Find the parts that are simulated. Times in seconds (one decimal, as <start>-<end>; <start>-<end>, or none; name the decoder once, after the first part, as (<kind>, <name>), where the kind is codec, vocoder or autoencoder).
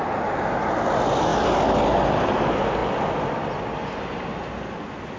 none